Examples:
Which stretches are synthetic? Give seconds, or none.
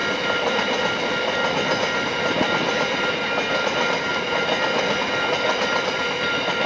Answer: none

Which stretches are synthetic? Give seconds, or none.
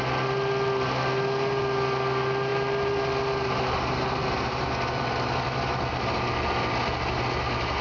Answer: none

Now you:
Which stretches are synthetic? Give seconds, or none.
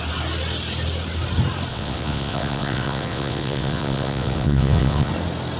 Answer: 1.7-5.1 (vocoder, WaveNeXt)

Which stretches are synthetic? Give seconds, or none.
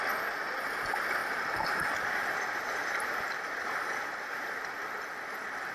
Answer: 1.2-4.6 (vocoder, BigVGAN v2)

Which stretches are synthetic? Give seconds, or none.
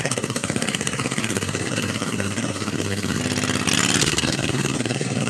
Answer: 0.0-3.2 (codec, SNAC); 4.0-5.3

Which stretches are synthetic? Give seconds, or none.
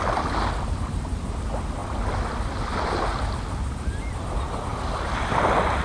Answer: none